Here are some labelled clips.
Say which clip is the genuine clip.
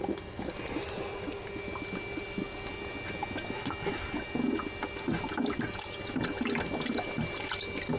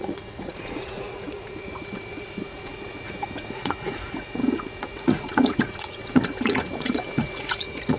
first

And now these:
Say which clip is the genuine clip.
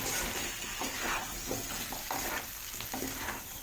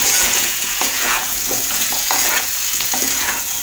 first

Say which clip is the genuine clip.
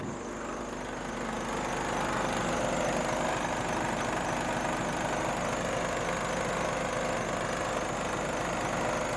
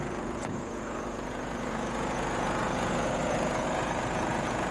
first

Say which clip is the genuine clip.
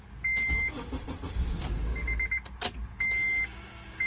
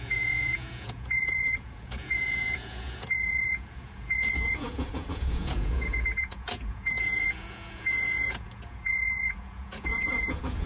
first